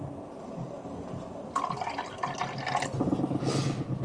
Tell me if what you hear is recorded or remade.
recorded